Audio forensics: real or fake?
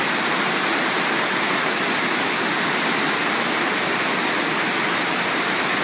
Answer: real